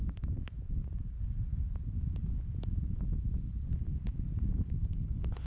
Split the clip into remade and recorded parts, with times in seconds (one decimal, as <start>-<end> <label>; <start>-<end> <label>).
0.0-4.9 recorded; 4.9-5.5 remade